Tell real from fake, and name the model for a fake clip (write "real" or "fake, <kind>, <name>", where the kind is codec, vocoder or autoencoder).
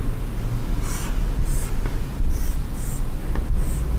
real